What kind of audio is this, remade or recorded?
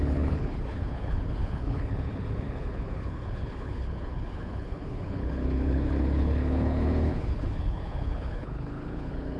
remade